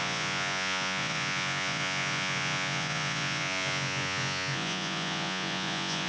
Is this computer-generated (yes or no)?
yes